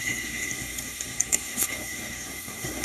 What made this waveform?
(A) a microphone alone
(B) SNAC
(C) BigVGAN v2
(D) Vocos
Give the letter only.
B